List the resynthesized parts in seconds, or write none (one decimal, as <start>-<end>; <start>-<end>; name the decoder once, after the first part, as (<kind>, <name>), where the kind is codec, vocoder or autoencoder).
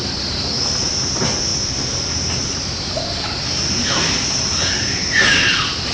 none